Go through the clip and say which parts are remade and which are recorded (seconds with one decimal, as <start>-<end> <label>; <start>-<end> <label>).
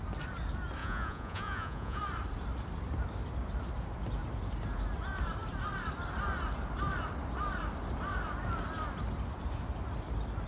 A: 0.0-0.8 recorded; 0.8-2.0 remade; 2.0-10.5 recorded